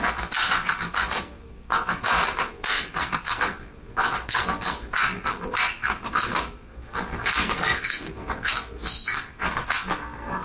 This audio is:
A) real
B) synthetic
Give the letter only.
B